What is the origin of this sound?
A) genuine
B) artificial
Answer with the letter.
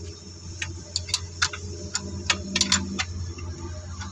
A